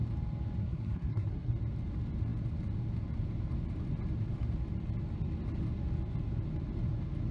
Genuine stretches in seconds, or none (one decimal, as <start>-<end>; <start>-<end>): 0.0-0.6; 1.5-7.3